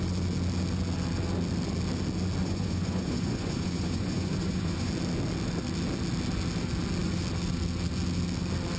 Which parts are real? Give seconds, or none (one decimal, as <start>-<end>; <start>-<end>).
0.0-2.4; 4.9-8.8